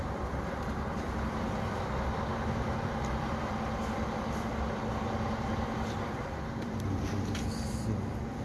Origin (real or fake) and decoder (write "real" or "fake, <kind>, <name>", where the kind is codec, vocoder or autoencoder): fake, vocoder, BigVGAN v2